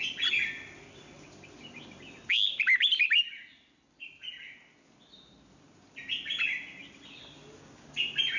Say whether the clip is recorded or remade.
recorded